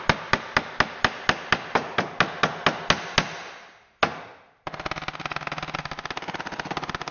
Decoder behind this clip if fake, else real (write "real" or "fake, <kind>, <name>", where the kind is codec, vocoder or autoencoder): real